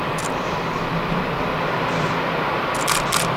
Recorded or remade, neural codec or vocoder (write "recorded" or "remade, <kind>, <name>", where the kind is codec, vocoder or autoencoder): recorded